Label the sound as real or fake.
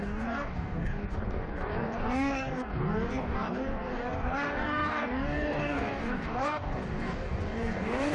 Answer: fake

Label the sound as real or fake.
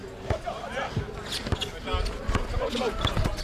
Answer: real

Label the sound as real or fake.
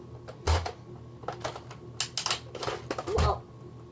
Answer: real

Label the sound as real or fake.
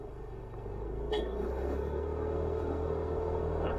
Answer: fake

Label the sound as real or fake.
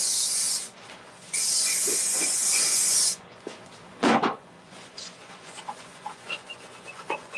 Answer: fake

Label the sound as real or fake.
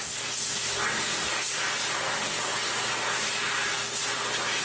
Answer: real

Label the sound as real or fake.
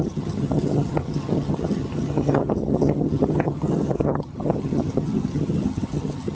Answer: fake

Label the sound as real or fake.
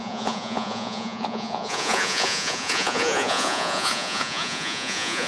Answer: fake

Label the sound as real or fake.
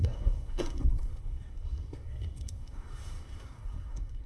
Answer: fake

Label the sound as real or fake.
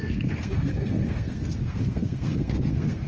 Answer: fake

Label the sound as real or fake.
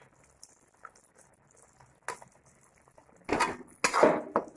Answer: real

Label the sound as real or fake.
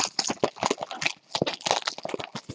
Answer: real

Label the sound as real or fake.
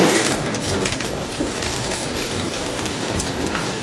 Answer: fake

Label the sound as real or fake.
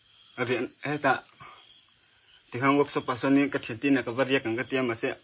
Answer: real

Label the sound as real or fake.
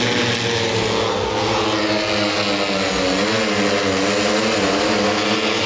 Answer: real